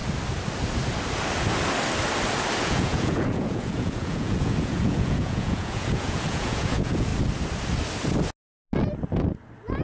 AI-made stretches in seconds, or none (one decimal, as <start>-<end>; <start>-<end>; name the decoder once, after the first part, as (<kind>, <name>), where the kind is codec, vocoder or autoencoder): 2.6-7.1 (vocoder, Vocos)